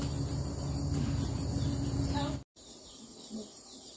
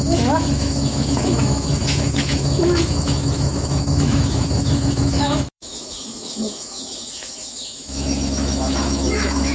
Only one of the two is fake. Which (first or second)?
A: second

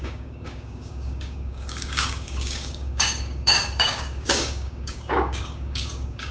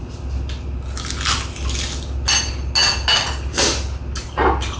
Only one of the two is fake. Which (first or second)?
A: first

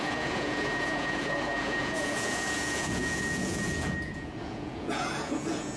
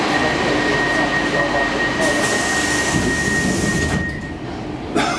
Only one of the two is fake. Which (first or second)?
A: first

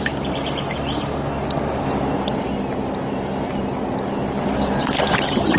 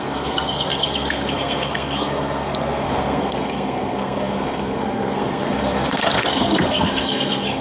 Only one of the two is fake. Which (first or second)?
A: second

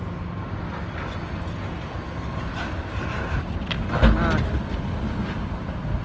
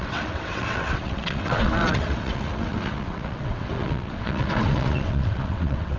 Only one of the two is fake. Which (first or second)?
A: second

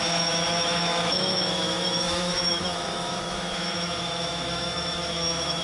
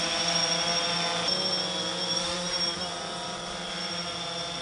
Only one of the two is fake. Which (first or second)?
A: first